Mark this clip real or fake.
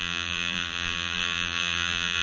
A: fake